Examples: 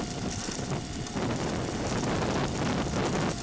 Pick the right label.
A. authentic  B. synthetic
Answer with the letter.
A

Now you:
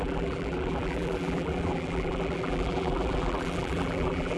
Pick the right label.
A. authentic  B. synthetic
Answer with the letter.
B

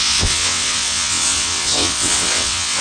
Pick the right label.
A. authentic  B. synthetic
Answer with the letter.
B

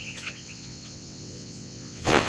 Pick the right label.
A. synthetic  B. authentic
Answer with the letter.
A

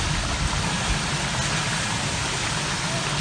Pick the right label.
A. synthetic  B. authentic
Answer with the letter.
B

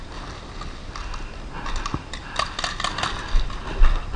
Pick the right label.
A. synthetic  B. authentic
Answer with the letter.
B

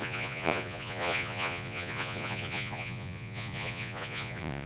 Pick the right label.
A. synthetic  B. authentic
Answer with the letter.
A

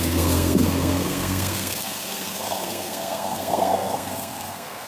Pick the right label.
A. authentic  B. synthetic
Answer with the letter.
B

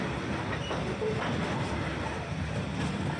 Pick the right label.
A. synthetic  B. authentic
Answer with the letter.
B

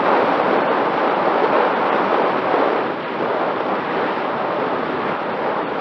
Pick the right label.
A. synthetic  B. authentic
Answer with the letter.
B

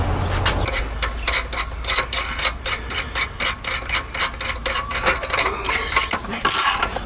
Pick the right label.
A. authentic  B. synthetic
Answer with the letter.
A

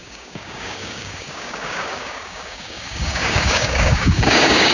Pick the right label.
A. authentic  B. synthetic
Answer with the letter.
B